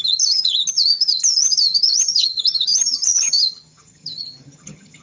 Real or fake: fake